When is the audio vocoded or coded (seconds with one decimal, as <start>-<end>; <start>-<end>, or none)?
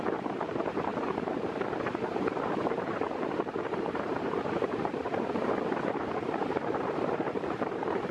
0.0-8.1